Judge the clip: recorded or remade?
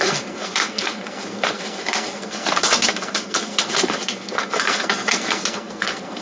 remade